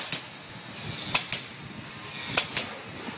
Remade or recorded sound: recorded